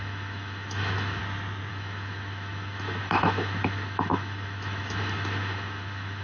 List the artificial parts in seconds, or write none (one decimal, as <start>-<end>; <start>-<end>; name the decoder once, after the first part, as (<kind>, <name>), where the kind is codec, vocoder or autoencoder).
0.0-1.2 (autoencoder, DAC-VAE); 1.7-6.2